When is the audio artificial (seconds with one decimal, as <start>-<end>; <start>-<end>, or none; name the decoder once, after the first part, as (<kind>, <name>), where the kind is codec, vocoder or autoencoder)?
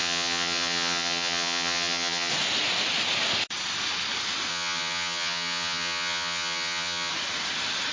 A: 0.0-2.3 (vocoder, HiFi-GAN); 4.5-7.1